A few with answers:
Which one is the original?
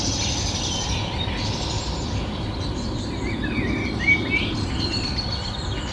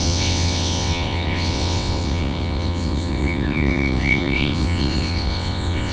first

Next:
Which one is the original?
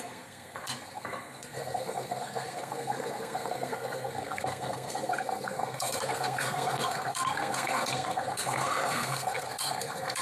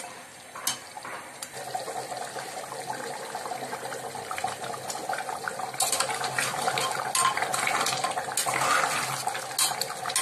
second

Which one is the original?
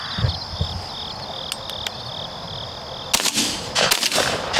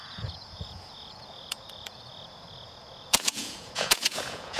first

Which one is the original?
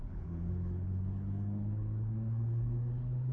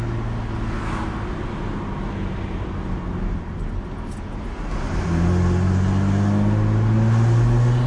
second